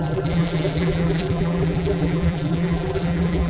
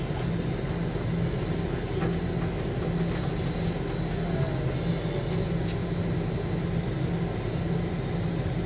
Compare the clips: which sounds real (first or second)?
second